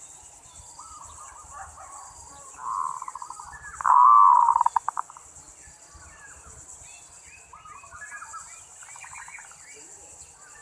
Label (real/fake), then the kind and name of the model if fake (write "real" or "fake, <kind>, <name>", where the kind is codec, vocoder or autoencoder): real